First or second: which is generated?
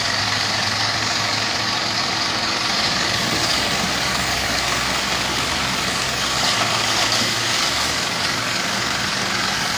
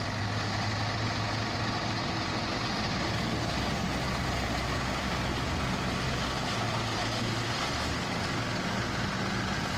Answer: first